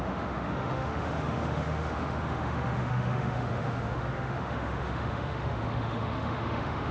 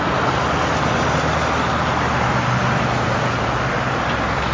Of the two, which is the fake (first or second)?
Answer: first